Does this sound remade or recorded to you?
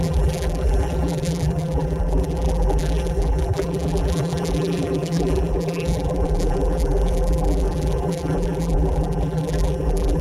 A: remade